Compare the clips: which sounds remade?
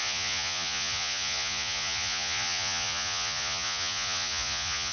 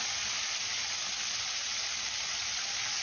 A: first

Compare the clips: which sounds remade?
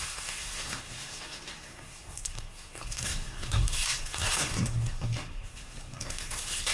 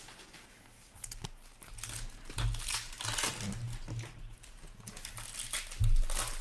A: first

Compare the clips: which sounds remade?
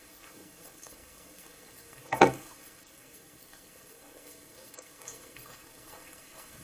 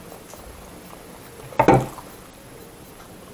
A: first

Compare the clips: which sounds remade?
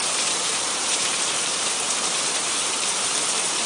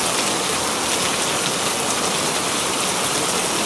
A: first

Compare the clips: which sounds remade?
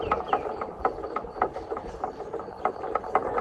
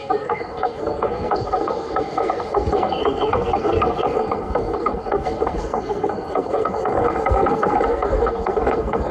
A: second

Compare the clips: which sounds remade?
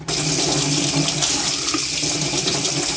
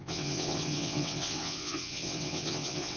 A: second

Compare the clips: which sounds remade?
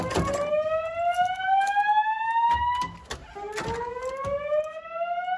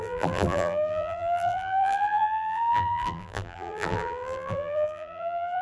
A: second